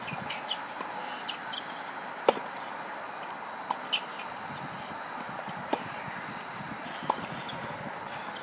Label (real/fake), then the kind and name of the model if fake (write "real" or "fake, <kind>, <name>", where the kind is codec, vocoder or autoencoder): real